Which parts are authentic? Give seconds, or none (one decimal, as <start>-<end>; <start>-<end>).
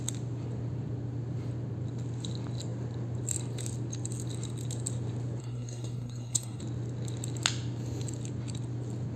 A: 0.0-5.4; 6.6-9.2